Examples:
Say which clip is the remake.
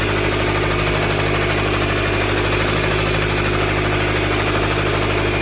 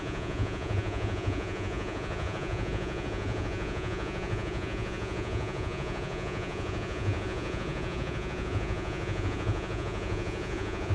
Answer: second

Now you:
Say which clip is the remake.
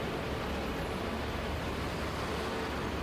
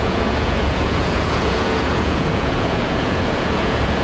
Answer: second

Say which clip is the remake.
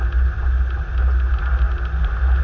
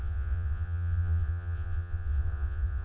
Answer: second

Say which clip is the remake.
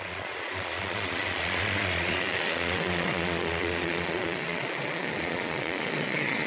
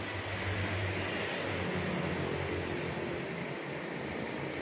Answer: first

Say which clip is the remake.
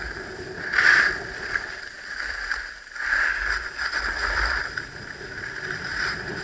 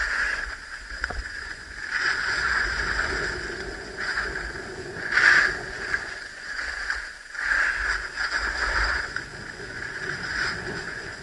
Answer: second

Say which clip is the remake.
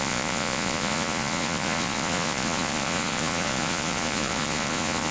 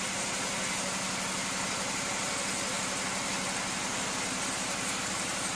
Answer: first